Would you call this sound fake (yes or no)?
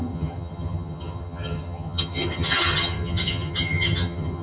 yes